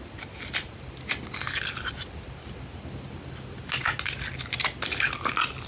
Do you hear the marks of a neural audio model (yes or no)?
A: no